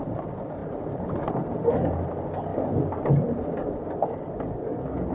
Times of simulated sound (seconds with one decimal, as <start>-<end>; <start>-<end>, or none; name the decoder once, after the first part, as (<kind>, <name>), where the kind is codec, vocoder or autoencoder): 0.6-1.7 (vocoder, BigVGAN v2)